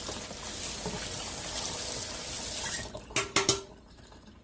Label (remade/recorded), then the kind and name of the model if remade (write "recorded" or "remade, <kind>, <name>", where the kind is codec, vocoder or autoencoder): recorded